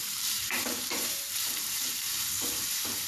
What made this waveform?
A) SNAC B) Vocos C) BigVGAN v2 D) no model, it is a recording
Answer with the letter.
C